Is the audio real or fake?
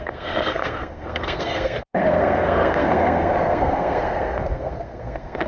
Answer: fake